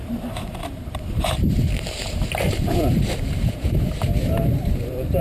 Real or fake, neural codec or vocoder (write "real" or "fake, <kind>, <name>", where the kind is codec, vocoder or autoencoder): fake, vocoder, BigVGAN v2